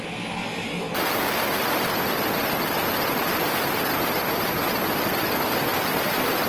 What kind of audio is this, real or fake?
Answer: real